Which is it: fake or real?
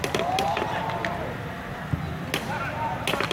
real